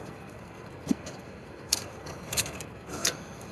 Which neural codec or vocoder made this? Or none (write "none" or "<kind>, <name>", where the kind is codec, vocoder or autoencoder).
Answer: codec, SNAC